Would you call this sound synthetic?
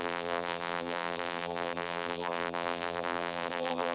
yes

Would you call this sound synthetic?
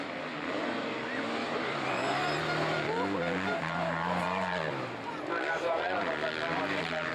yes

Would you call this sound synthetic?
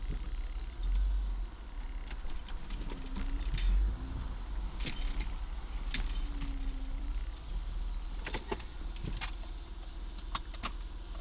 no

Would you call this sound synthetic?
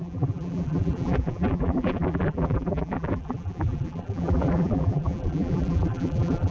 yes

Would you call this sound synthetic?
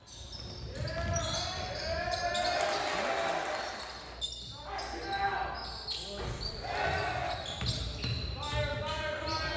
no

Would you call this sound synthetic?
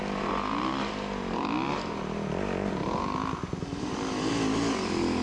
no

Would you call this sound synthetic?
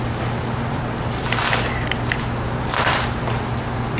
no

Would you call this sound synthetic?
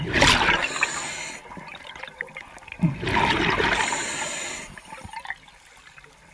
no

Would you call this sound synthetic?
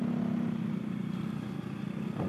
no